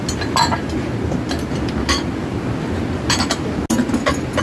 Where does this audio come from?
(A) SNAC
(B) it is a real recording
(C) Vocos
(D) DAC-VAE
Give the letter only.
B